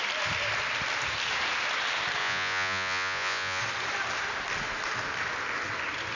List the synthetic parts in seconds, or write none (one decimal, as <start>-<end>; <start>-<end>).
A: 2.2-3.6